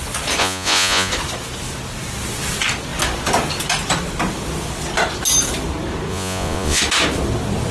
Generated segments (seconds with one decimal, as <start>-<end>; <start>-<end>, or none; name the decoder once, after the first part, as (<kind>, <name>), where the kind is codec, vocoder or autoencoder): 0.4-1.1 (vocoder, Vocos); 6.1-6.8